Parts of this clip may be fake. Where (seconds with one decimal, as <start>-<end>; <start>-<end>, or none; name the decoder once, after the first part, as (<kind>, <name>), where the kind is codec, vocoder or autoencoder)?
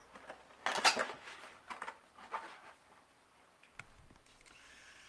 none